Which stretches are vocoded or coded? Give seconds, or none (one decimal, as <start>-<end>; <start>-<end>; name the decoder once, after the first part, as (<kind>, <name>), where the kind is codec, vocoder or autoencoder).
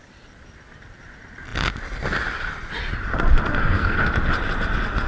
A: 3.6-4.1 (codec, SNAC)